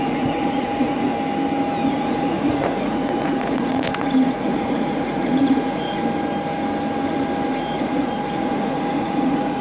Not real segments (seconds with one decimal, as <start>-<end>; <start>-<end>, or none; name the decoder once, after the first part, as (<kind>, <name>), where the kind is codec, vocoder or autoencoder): 0.0-1.1 (vocoder, Vocos); 1.9-6.0; 7.5-9.6